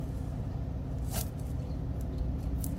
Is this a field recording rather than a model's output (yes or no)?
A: no